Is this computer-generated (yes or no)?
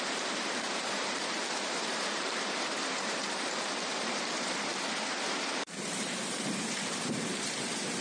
yes